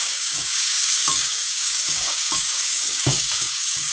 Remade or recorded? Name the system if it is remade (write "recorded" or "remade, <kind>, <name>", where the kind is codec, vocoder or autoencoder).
remade, codec, DAC